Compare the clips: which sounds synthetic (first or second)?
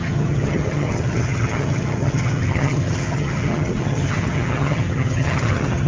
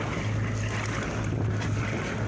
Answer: first